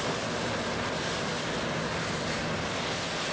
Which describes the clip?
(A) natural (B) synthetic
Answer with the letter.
A